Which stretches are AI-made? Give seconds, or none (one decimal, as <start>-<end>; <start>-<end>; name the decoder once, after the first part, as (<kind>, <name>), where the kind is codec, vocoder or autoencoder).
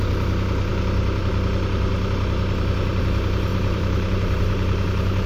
3.5-5.3 (vocoder, BigVGAN v2)